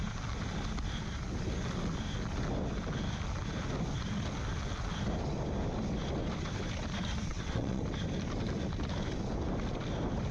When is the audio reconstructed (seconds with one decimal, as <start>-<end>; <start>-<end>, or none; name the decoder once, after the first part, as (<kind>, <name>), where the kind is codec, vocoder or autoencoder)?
7.3-7.8 (vocoder, WaveNeXt)

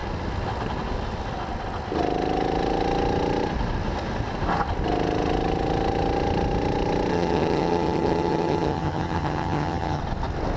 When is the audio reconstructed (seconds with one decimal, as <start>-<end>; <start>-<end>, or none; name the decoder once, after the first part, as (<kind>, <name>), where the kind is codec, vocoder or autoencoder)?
7.1-10.0 (vocoder, HiFi-GAN)

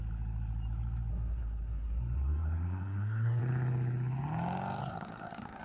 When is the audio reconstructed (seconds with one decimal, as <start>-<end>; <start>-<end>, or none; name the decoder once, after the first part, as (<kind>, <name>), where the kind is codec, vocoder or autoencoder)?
1.1-3.4 (codec, SNAC); 4.8-5.6